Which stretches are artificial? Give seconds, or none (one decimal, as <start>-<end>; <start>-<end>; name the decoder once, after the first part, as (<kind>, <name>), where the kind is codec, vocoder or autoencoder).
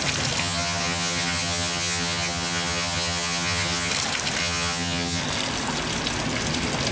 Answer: 0.4-3.9 (vocoder, HiFi-GAN); 4.4-5.2